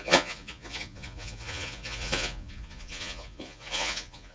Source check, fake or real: fake